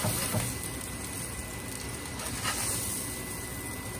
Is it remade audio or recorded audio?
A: recorded